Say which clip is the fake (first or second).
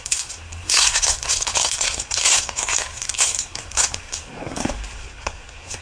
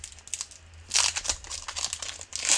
first